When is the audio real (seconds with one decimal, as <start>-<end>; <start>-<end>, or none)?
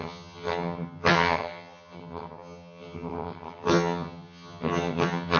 none